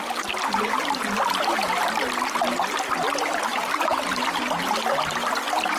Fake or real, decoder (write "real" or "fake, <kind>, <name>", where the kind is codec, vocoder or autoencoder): real